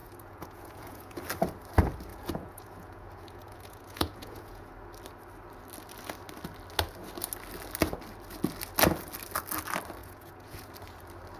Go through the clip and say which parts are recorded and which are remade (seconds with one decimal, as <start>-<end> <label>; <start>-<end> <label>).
0.0-1.2 remade; 1.2-2.1 recorded; 2.1-4.7 remade; 4.7-10.0 recorded; 10.0-10.7 remade; 10.7-11.4 recorded